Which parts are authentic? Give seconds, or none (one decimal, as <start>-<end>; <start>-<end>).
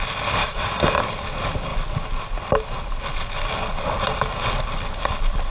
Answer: 0.0-0.4; 1.0-5.5